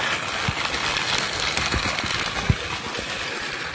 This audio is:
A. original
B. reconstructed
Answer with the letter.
A